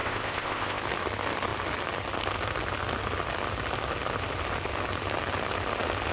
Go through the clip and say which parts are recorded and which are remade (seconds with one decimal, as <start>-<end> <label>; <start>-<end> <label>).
0.0-0.8 remade; 0.8-6.1 recorded